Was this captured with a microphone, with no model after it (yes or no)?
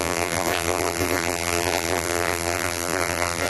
no